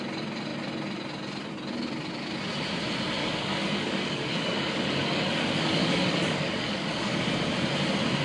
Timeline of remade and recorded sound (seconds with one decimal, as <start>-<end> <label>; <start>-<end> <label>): 0.0-3.2 recorded; 3.2-7.2 remade; 7.2-8.2 recorded